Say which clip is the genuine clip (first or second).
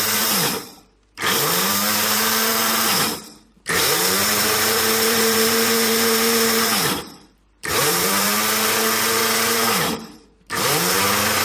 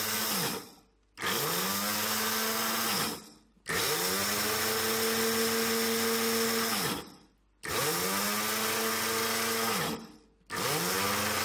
second